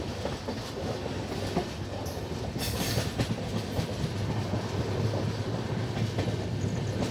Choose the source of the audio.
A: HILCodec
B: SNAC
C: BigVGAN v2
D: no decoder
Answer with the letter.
D